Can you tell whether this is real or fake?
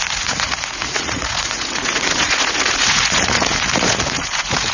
fake